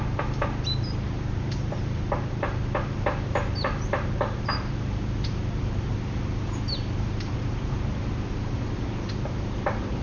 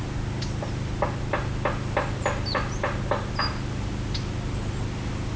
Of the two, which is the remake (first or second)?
first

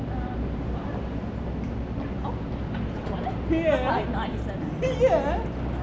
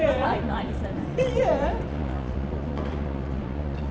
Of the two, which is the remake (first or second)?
second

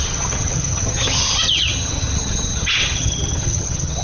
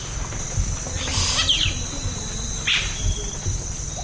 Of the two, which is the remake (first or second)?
first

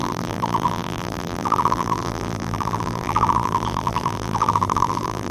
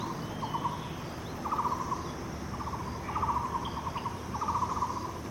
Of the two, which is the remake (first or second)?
first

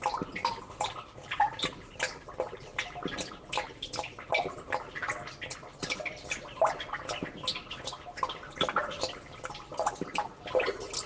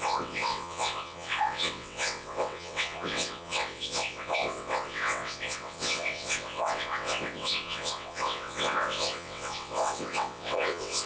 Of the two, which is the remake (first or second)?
second